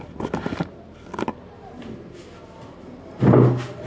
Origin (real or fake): real